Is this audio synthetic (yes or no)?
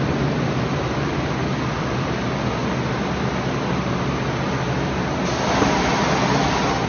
no